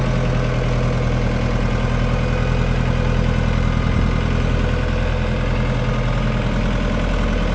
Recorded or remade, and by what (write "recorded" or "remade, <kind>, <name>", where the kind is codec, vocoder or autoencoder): recorded